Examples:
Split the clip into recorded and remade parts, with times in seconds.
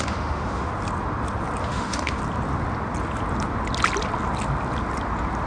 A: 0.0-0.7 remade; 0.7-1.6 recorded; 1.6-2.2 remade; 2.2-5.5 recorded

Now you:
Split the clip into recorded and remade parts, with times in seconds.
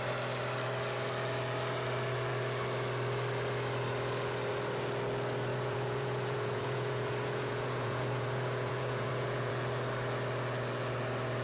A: 0.0-5.5 recorded; 5.5-9.5 remade; 9.5-11.4 recorded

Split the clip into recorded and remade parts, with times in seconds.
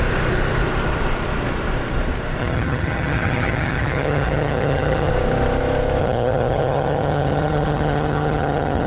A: 0.0-2.4 recorded; 2.4-5.1 remade; 5.1-6.0 recorded; 6.0-8.9 remade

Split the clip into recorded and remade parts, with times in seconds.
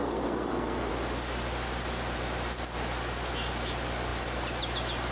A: 0.0-0.9 remade; 0.9-5.1 recorded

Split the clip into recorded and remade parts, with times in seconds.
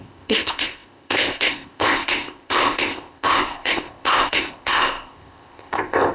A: 0.0-6.1 remade